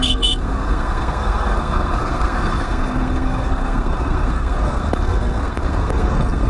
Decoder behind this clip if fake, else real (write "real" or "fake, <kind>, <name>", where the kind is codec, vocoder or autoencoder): fake, codec, SNAC